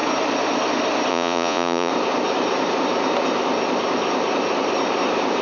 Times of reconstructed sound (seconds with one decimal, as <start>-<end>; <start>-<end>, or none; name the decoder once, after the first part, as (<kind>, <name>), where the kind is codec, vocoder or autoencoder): 1.1-1.9 (vocoder, Vocos)